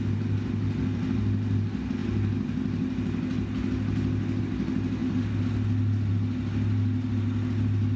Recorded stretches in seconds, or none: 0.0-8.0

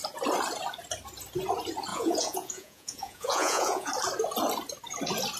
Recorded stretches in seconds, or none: 0.0-1.9; 3.9-5.4

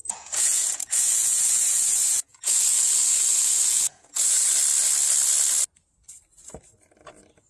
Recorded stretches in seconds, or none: 4.5-7.5

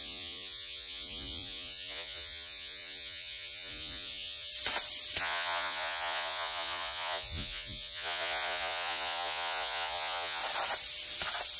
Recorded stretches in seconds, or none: 4.5-5.2; 10.4-11.6

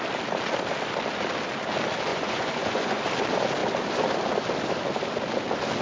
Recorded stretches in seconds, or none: 0.0-2.1; 3.0-5.8